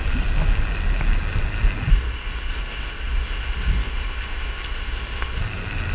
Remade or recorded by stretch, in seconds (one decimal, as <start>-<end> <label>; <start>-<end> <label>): 0.0-1.9 recorded; 1.9-5.4 remade; 5.4-5.9 recorded